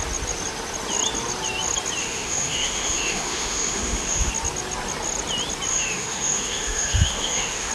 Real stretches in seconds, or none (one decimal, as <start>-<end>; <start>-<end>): 0.0-2.0; 4.3-5.7